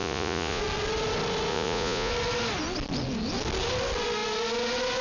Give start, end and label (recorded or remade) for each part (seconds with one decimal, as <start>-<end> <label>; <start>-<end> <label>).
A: 0.0-0.6 remade; 0.6-1.5 recorded; 1.5-2.1 remade; 2.1-5.0 recorded